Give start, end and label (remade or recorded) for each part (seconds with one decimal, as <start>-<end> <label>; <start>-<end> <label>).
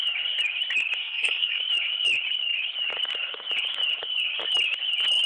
0.0-1.0 recorded; 1.0-1.6 remade; 1.6-5.3 recorded